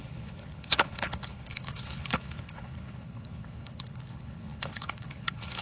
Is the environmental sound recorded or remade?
remade